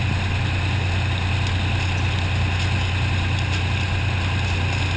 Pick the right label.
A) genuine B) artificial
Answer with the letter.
A